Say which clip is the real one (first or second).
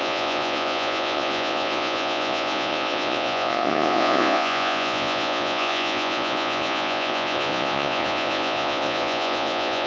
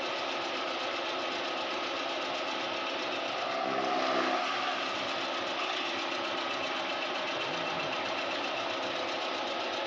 second